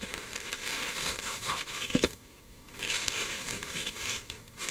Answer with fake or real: fake